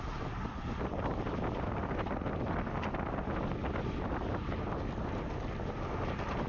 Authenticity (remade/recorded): recorded